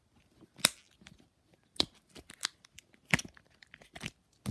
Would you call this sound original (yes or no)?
yes